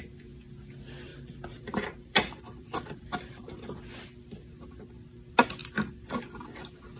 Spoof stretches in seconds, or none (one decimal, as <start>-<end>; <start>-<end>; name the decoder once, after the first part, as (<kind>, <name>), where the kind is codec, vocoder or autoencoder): 1.1-3.6 (vocoder, BigVGAN v2)